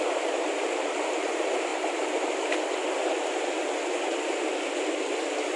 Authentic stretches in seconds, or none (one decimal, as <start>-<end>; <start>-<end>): 0.0-1.7; 3.9-5.6